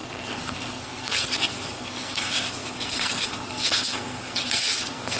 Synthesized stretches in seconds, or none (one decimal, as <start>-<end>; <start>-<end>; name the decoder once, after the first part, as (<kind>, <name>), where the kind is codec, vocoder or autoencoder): 0.0-5.2 (codec, SNAC)